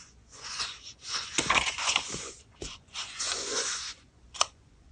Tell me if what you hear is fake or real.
fake